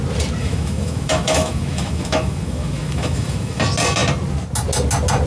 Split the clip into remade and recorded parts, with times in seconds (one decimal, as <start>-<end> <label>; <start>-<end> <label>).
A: 0.0-0.4 recorded; 0.4-3.6 remade; 3.6-5.3 recorded